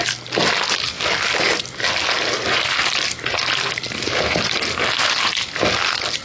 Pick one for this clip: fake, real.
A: real